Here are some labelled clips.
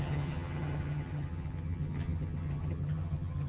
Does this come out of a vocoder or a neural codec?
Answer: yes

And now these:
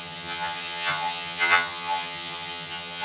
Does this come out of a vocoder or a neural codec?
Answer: yes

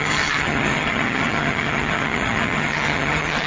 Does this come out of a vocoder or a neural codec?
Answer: yes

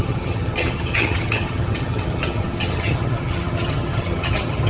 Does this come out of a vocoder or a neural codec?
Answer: yes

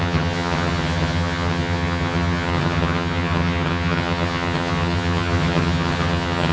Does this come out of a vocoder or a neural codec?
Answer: yes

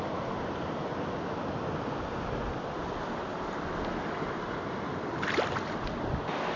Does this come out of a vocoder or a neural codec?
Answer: no